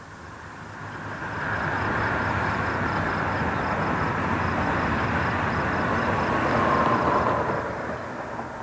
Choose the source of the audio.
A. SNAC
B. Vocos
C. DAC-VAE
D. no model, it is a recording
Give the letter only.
D